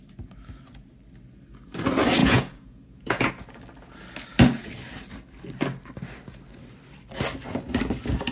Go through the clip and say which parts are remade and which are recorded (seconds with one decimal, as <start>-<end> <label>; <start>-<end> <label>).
0.0-2.2 recorded; 2.2-3.3 remade; 3.3-8.3 recorded